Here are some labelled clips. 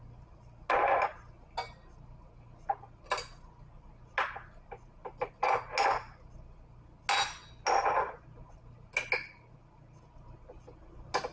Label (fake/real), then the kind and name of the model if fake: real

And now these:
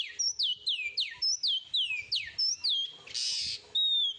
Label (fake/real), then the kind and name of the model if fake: real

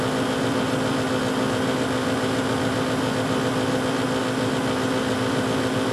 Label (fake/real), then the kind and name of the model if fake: real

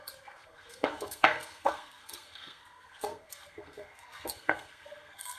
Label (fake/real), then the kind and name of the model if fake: fake, codec, SNAC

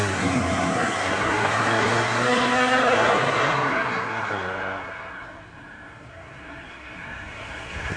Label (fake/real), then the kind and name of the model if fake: fake, codec, SNAC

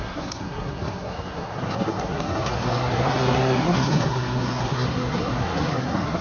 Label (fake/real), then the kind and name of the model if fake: fake, codec, SNAC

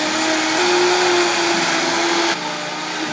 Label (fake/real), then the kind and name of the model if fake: real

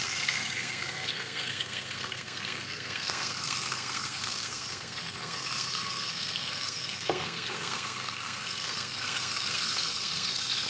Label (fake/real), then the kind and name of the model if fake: fake, codec, SNAC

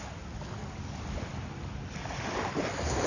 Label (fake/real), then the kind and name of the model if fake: real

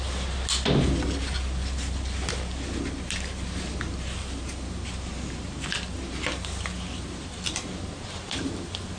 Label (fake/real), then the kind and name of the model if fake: real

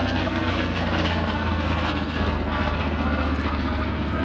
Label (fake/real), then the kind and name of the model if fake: fake, codec, SNAC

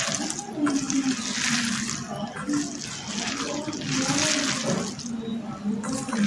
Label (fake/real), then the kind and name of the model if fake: real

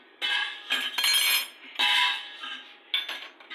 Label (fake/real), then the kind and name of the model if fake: real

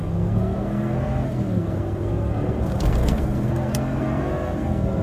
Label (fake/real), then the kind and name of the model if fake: fake, codec, SNAC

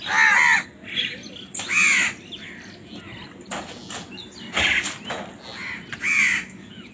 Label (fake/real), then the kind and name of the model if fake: real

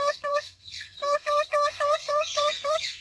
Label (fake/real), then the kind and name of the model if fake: fake, codec, SNAC